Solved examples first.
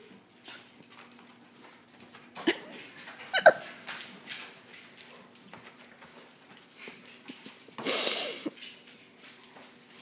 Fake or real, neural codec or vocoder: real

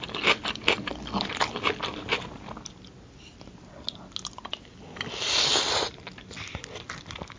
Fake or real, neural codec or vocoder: real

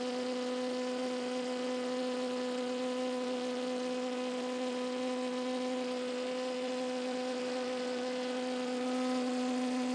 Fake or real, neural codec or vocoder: real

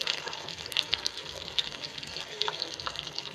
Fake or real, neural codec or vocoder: fake, codec, SNAC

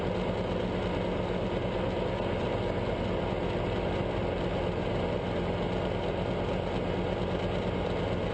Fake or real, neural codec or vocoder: real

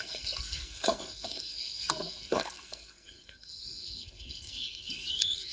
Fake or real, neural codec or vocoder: fake, codec, SNAC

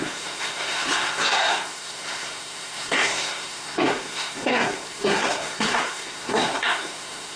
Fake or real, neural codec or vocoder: fake, codec, SNAC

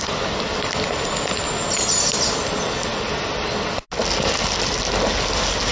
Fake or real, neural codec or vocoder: real